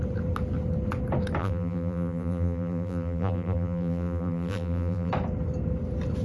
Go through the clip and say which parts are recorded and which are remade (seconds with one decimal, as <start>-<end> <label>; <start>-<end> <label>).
0.0-1.4 recorded; 1.4-5.1 remade; 5.1-6.2 recorded